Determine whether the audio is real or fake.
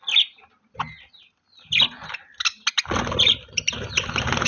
real